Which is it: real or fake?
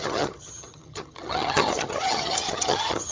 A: fake